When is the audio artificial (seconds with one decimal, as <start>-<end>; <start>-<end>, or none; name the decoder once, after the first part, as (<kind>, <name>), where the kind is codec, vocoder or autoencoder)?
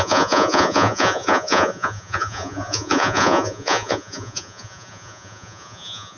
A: 0.0-6.2 (vocoder, Vocos)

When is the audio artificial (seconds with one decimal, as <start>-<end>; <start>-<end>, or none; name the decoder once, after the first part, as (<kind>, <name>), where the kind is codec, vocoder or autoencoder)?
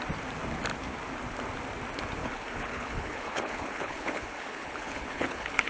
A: 2.2-5.7 (codec, HILCodec)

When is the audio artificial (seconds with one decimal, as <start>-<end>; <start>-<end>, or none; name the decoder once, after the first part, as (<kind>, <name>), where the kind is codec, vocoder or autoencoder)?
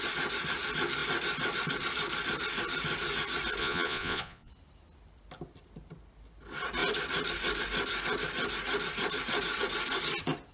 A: 3.6-4.5 (vocoder, Vocos)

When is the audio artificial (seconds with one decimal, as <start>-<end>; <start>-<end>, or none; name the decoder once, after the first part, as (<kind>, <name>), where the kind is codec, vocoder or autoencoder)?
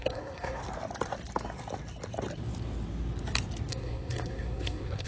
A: 0.0-0.6 (codec, SNAC); 3.7-5.1